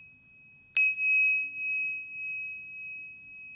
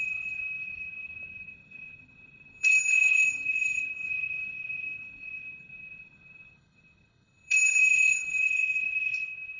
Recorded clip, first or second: first